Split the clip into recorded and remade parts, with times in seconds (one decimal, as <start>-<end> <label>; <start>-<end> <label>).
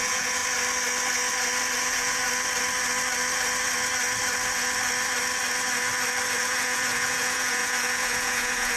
0.0-0.4 remade; 0.4-1.8 recorded; 1.8-2.2 remade; 2.2-6.4 recorded; 6.4-8.8 remade